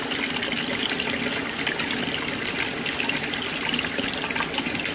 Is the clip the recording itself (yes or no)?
yes